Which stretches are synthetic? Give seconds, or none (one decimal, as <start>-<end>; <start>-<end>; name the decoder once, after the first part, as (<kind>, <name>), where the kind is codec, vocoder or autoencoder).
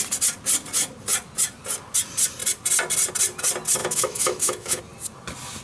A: 3.8-4.8 (autoencoder, DAC-VAE)